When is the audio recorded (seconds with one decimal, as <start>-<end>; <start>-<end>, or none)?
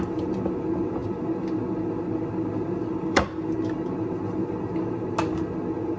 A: 0.0-6.0